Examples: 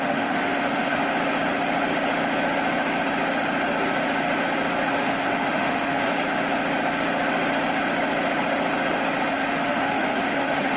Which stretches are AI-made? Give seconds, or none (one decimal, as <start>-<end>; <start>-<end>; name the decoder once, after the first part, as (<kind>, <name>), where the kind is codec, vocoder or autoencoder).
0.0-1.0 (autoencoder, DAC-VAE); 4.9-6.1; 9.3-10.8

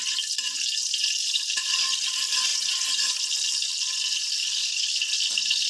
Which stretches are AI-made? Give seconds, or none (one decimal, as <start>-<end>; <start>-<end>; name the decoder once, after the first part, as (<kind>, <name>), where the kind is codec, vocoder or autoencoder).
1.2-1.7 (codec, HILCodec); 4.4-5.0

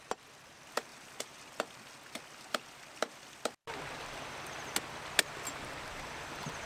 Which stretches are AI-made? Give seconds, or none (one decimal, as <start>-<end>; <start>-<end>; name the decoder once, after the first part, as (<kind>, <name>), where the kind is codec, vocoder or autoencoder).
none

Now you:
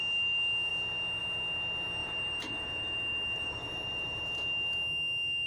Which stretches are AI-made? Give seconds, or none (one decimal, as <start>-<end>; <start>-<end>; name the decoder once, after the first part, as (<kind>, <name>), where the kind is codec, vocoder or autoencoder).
2.0-4.2 (vocoder, BigVGAN v2)

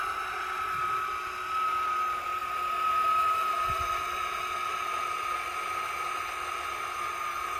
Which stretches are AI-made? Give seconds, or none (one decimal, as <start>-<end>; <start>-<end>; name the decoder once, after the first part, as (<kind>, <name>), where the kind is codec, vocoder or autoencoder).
none

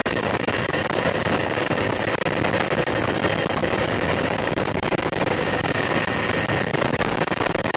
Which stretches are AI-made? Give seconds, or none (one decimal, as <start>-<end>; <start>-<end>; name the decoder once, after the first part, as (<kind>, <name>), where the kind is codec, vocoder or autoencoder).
0.0-1.9 (codec, DAC); 3.6-5.9; 6.7-7.8

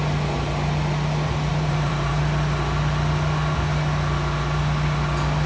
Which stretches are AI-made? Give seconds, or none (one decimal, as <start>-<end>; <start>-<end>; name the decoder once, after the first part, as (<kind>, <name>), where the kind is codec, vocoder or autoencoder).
1.5-2.2 (vocoder, BigVGAN v2)

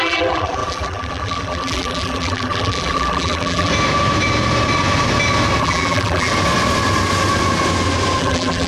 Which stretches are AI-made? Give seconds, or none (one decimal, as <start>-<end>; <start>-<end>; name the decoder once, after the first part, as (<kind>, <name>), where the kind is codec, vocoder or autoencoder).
0.0-3.7 (vocoder, BigVGAN v2); 5.6-6.3; 8.2-8.7